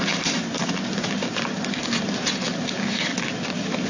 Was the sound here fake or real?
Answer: real